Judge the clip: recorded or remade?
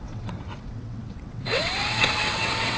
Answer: remade